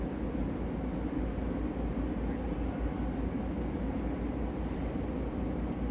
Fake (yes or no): no